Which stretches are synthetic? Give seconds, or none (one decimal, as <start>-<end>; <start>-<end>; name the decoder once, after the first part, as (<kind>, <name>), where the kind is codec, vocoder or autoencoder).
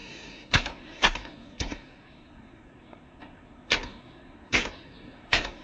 0.0-5.6 (codec, SNAC)